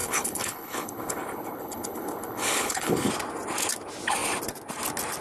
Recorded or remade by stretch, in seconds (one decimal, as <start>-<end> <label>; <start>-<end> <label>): 0.0-3.1 remade; 3.1-5.2 recorded